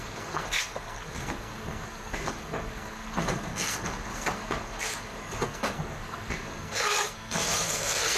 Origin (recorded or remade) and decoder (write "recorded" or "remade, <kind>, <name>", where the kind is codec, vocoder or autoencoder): remade, codec, SNAC